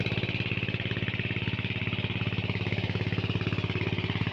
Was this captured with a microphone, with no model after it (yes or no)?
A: yes